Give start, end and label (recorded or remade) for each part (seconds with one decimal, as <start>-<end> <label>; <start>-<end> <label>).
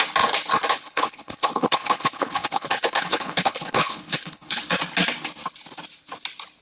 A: 0.0-0.7 recorded; 0.7-4.6 remade; 4.6-6.6 recorded